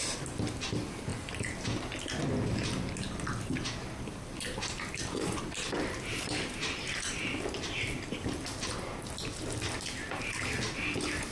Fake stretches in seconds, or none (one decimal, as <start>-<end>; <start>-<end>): none